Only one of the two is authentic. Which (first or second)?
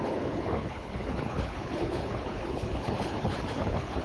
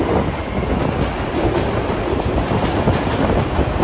second